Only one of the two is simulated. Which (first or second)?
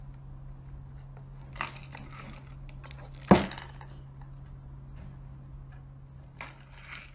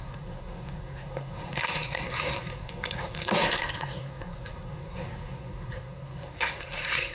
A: second